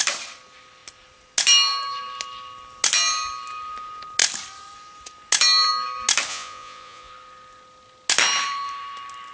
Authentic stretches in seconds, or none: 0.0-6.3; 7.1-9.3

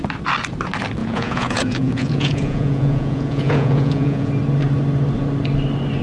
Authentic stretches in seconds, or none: 0.0-1.0; 4.3-6.0

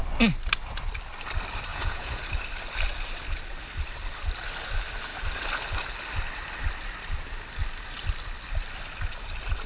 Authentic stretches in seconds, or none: 0.0-1.7; 2.2-9.7

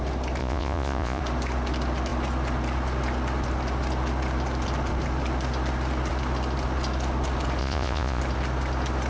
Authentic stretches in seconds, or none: 0.0-0.4; 1.2-7.6; 8.2-9.1

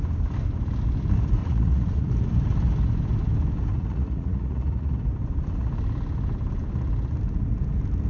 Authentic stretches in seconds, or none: 0.0-1.4; 2.1-3.7; 4.9-8.1

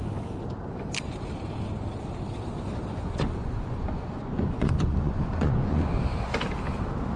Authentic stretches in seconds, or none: 0.0-2.9; 5.9-7.2

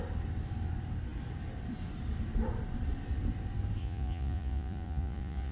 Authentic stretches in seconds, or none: 0.0-3.8